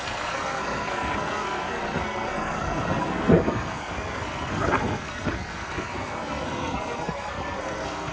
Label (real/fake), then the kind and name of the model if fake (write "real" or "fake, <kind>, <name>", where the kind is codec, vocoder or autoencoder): fake, codec, SNAC